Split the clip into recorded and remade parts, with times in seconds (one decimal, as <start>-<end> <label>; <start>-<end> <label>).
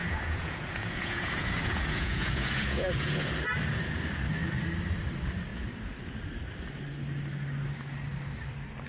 0.0-3.3 remade; 3.3-8.9 recorded